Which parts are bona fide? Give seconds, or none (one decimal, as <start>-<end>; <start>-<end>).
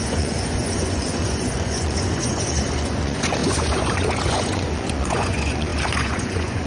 none